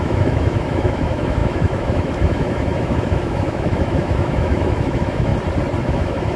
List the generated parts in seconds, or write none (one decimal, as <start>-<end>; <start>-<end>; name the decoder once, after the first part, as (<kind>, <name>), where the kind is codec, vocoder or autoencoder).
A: 0.0-5.3 (autoencoder, DAC-VAE); 5.8-6.4